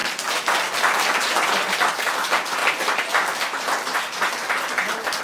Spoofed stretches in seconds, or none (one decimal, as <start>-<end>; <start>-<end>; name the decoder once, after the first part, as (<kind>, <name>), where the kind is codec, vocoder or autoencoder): none